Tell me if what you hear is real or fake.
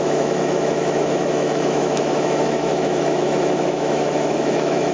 fake